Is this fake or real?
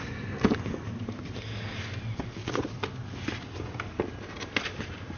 real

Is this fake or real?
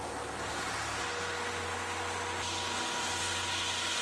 real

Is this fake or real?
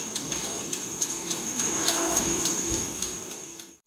fake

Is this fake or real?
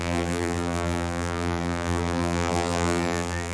fake